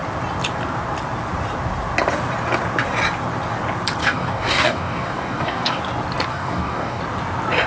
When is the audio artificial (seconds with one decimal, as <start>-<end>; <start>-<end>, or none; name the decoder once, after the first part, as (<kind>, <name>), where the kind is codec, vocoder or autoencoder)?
4.0-5.8 (codec, DAC); 6.3-7.0